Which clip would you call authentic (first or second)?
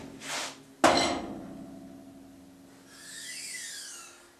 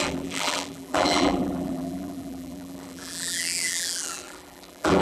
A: first